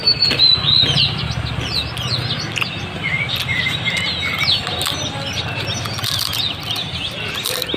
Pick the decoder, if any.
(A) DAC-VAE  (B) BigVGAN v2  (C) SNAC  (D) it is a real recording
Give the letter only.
D